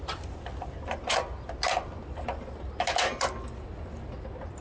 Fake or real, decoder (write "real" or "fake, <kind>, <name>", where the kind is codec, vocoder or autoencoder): real